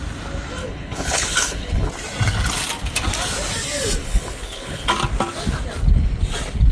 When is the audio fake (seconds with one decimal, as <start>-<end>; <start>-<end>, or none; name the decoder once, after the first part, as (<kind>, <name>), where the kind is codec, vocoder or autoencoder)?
0.6-1.9 (codec, HILCodec); 4.0-4.9